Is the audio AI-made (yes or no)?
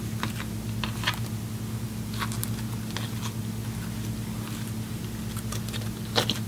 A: no